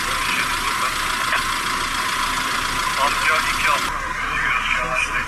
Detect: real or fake real